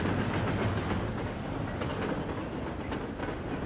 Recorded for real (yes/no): yes